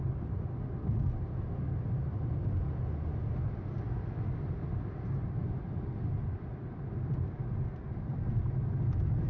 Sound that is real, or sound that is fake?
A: real